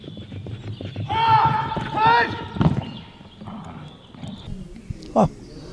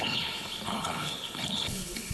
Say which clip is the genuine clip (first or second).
first